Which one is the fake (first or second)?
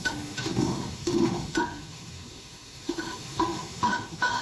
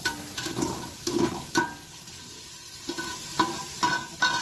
first